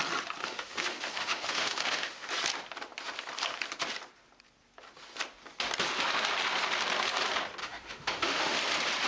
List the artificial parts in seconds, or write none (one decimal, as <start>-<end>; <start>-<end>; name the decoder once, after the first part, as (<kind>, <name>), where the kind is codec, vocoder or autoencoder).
0.4-2.3 (autoencoder, DAC-VAE); 7.6-8.6